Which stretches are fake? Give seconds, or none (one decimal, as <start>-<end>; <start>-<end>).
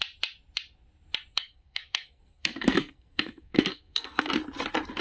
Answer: 1.3-4.3